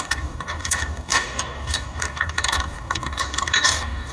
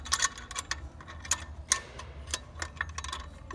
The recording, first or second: second